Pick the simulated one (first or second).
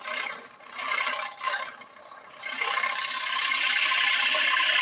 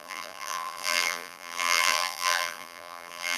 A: second